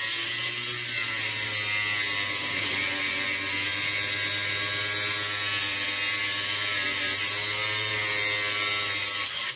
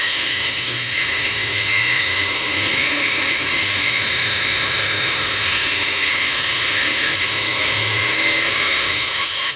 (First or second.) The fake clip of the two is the second